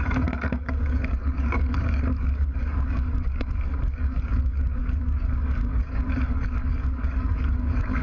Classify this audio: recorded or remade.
remade